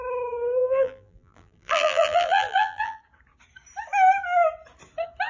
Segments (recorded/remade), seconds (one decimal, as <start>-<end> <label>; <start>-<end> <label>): 0.0-0.6 recorded; 0.6-3.0 remade; 3.0-5.3 recorded